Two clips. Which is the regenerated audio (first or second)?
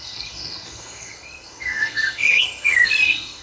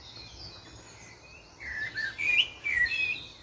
first